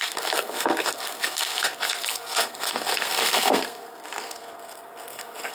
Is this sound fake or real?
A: fake